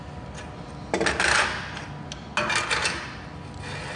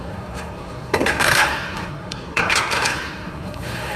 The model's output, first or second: second